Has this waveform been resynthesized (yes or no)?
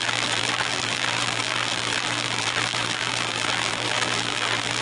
yes